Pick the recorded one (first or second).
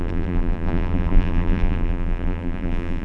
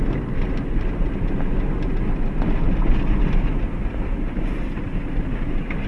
second